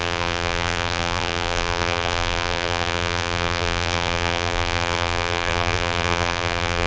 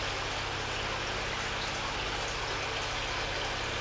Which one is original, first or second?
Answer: second